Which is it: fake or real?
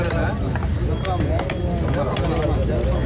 real